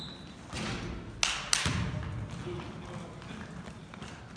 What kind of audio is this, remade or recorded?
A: recorded